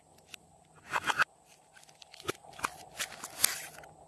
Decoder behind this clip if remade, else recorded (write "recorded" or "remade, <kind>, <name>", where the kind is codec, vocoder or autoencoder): recorded